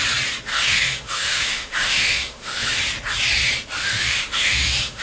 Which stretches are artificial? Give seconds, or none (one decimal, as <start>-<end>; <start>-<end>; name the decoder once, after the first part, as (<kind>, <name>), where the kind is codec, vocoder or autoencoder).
0.5-2.8 (autoencoder, DAC-VAE); 3.8-5.0